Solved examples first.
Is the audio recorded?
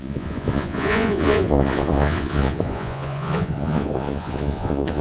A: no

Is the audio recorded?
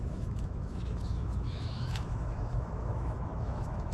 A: no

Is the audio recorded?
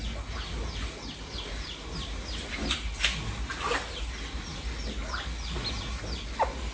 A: yes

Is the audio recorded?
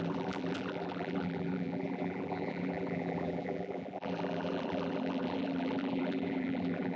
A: no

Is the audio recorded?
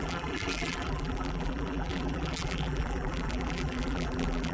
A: no